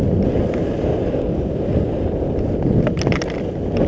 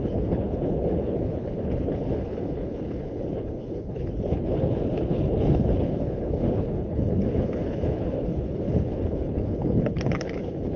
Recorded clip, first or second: first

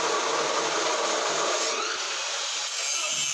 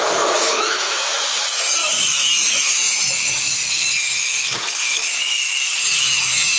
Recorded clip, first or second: first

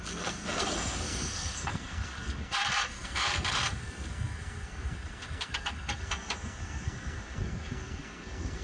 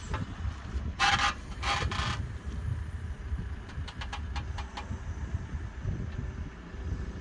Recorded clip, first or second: second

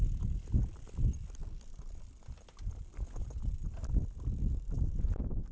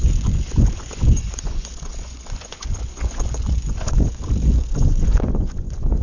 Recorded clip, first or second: first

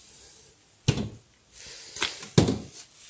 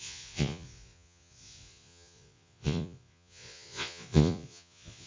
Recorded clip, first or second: first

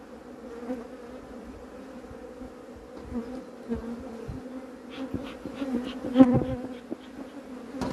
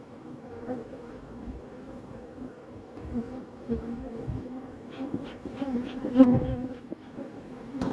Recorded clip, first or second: first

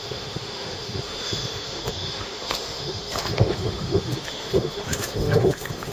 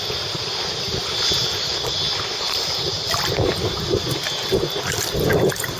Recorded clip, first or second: second